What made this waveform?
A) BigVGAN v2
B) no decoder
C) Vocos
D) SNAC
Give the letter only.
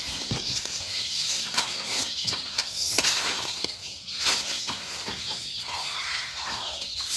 D